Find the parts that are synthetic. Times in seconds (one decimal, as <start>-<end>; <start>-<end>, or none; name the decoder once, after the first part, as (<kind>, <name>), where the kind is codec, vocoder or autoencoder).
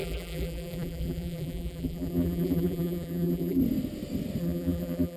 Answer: 0.0-3.6 (vocoder, BigVGAN v2); 4.4-5.2